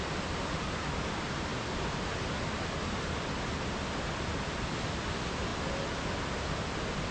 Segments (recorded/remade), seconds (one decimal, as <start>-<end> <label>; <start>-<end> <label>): 0.0-7.1 recorded